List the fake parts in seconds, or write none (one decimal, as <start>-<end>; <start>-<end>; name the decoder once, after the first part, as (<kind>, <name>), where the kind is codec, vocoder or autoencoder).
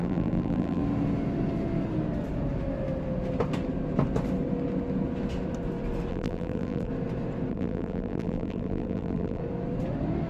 0.0-0.8 (vocoder, BigVGAN v2); 6.1-6.9; 7.5-9.4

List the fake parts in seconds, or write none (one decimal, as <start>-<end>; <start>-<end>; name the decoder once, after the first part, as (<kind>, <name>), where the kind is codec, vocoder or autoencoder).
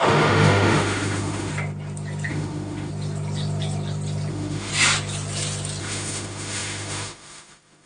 0.0-1.5 (autoencoder, DAC-VAE); 2.3-2.9; 4.3-4.7; 5.8-7.9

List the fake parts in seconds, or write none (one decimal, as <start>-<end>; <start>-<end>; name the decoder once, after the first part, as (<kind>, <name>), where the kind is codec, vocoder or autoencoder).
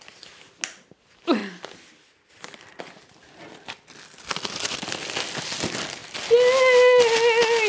none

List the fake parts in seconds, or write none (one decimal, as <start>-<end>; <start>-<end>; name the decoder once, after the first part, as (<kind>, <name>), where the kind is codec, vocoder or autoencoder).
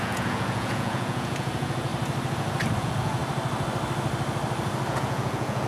0.0-1.9 (vocoder, Vocos); 2.8-3.2; 4.9-5.7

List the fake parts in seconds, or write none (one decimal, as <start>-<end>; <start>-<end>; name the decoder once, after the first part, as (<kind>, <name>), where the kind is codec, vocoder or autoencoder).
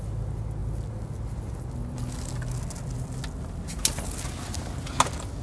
none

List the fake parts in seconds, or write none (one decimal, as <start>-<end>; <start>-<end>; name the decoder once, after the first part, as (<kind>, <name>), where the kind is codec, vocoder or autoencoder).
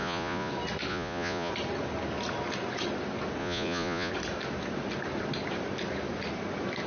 0.0-0.5 (vocoder, Vocos); 0.9-1.5; 3.4-4.1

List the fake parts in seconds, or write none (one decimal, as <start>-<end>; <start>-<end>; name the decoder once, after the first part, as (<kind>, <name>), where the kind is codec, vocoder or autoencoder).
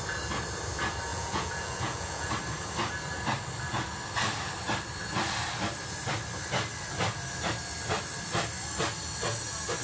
1.1-2.3 (vocoder, Vocos)